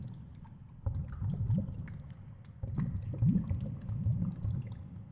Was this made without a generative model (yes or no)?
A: yes